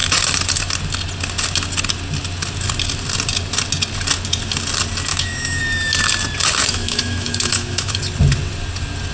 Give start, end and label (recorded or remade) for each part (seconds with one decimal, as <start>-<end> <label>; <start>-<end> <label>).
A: 0.0-5.1 recorded; 5.1-5.6 remade; 5.6-6.6 recorded; 6.6-8.0 remade; 8.0-9.1 recorded